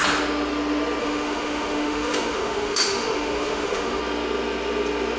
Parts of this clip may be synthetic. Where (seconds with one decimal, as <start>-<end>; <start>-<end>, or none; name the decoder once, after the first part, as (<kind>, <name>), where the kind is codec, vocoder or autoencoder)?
1.0-4.0 (autoencoder, DAC-VAE)